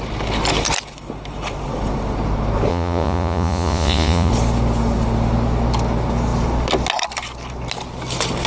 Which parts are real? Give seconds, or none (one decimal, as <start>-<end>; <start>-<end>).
0.0-2.7; 4.3-8.5